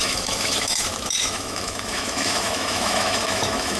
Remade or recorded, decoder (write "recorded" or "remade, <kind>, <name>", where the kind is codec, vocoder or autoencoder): remade, autoencoder, DAC-VAE